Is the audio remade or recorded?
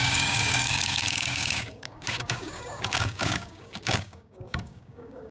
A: remade